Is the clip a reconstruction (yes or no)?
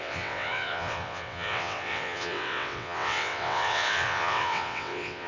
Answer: yes